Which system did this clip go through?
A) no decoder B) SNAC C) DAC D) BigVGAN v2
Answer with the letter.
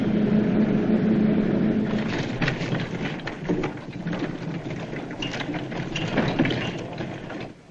A